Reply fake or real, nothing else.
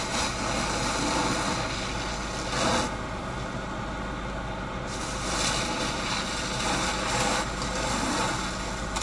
real